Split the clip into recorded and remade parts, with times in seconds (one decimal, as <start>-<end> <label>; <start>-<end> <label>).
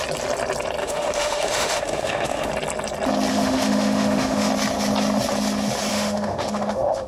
0.0-0.8 recorded; 0.8-2.5 remade; 2.5-3.3 recorded; 3.3-4.5 remade; 4.5-5.9 recorded; 5.9-7.1 remade